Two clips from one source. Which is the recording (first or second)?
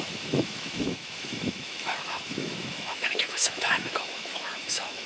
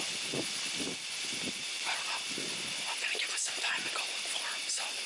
second